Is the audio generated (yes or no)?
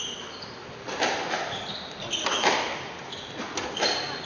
no